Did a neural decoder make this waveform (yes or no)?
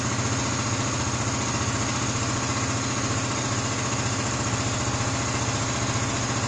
no